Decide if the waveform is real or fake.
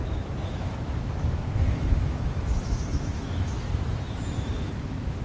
fake